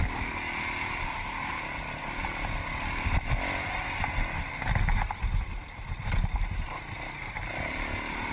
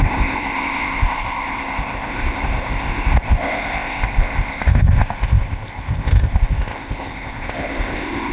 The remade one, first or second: second